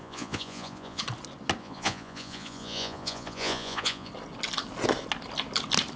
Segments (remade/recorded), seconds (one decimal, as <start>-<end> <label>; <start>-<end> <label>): 0.0-1.0 remade; 1.0-1.6 recorded; 1.6-4.1 remade; 4.1-6.0 recorded